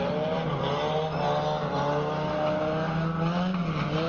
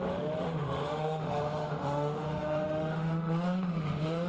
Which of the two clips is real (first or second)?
first